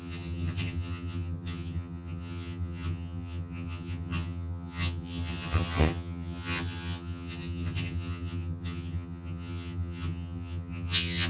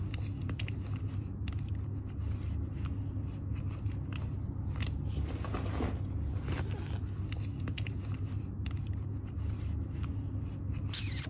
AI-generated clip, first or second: first